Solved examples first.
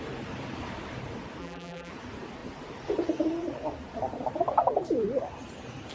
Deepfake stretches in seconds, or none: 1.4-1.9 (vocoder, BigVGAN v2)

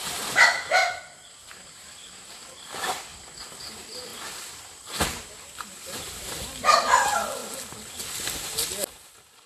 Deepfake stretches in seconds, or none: 0.0-0.8 (vocoder, BigVGAN v2); 1.6-7.4

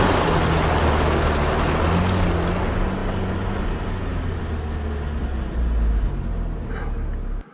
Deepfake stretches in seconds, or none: none

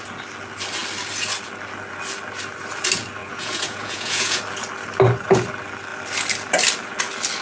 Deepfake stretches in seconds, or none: 3.2-4.4 (vocoder, Vocos)

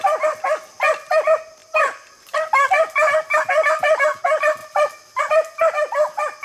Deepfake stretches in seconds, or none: 1.6-3.2 (vocoder, BigVGAN v2); 4.6-5.2